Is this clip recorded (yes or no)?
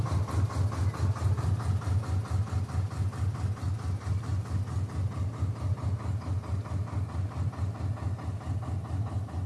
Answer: yes